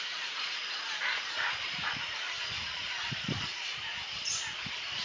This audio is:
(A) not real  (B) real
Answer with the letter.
B